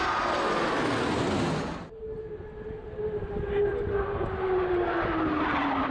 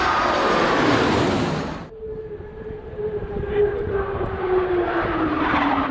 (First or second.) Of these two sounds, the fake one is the second